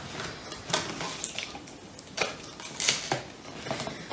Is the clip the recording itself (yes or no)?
yes